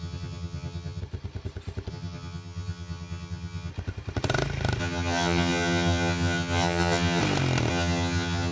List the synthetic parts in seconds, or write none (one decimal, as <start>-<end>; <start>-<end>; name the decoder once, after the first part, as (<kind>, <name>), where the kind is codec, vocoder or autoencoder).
0.0-1.0 (vocoder, HiFi-GAN); 1.9-3.7; 4.8-7.2; 7.7-8.5